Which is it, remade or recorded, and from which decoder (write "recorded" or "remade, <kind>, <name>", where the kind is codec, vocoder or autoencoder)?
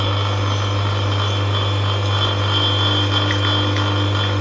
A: recorded